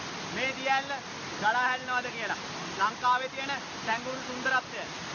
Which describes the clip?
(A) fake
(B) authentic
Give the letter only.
B